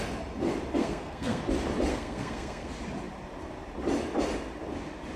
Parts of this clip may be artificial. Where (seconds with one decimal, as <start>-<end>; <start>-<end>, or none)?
0.8-1.4; 1.9-2.7